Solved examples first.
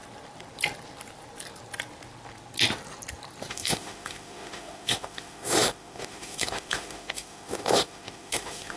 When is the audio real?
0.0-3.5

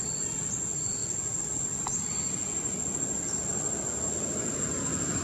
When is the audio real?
0.0-5.2

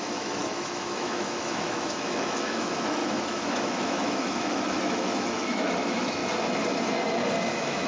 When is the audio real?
6.2-7.5

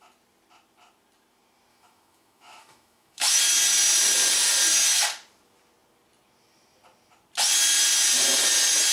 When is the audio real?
0.0-1.7; 3.4-8.9

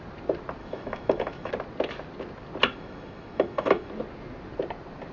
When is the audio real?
0.0-0.6; 1.5-2.7; 3.9-5.1